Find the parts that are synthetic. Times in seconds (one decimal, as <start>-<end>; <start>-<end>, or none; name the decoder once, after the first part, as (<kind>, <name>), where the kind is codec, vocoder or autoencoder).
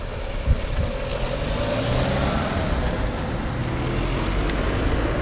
none